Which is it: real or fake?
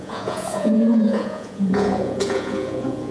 fake